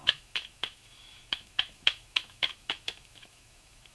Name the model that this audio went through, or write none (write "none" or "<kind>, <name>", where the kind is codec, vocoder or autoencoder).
autoencoder, DAC-VAE